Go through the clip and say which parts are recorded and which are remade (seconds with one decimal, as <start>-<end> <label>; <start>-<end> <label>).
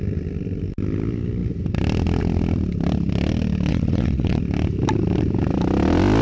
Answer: 0.0-3.7 recorded; 3.7-4.4 remade; 4.4-6.2 recorded